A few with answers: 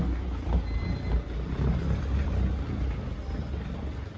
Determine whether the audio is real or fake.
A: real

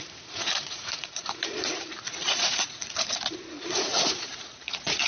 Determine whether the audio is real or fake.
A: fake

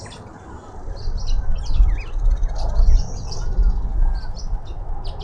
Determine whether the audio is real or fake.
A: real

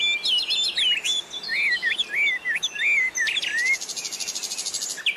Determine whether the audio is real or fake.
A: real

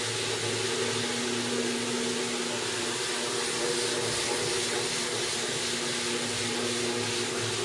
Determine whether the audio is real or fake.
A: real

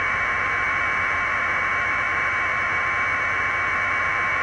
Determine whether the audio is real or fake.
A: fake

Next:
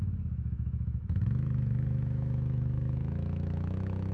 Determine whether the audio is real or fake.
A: fake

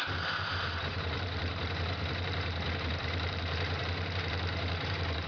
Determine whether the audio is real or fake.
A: fake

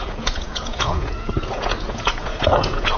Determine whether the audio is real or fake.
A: fake